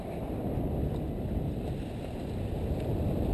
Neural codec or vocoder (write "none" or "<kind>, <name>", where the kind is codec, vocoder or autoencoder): none